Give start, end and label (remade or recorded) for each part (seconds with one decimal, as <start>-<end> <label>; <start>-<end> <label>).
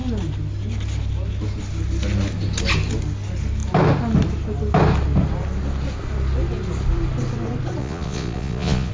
0.0-7.8 recorded; 7.8-8.9 remade